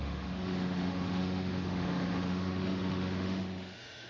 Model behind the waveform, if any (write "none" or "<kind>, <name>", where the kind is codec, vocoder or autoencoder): autoencoder, DAC-VAE